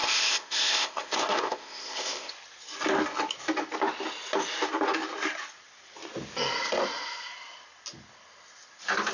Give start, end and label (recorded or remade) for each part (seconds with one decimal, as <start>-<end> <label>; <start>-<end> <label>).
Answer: 0.0-2.3 remade; 2.3-9.1 recorded